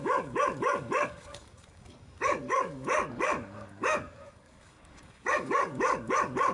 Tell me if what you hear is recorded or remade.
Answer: remade